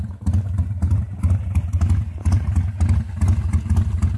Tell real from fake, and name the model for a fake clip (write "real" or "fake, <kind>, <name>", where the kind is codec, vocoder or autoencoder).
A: real